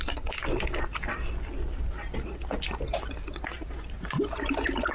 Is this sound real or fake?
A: real